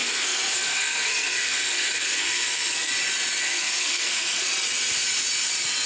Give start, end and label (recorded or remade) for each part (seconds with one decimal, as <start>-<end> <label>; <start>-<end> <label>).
0.0-2.9 remade; 2.9-3.4 recorded; 3.4-4.5 remade; 4.5-5.9 recorded